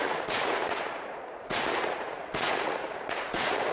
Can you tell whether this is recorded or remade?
remade